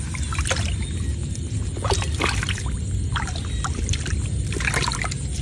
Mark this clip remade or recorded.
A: recorded